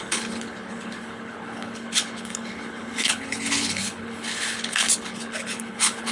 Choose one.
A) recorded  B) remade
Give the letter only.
B